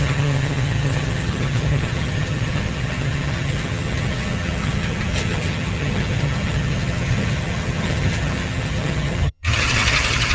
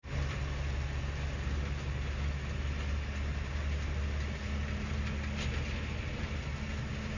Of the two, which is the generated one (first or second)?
first